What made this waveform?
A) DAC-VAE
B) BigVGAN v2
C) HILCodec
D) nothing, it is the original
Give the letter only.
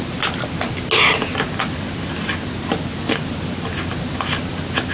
D